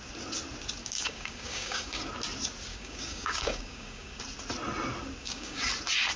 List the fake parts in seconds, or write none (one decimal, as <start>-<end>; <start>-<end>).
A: 0.8-2.1; 2.7-4.2; 5.2-5.7